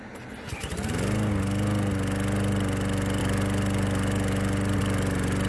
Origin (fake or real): real